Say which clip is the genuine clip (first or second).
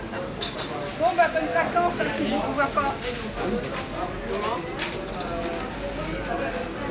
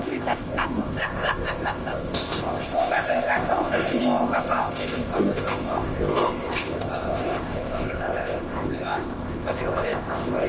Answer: first